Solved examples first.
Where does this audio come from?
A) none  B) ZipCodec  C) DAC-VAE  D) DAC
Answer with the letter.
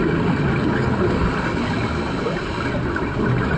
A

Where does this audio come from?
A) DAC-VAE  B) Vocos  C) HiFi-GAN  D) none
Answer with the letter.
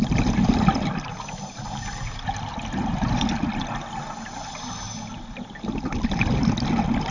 D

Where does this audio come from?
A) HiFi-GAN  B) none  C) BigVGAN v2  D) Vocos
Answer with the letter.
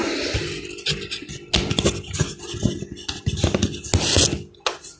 B